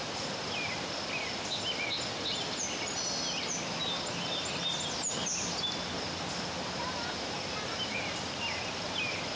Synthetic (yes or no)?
no